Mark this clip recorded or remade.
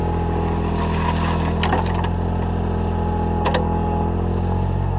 recorded